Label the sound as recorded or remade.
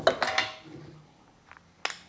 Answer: recorded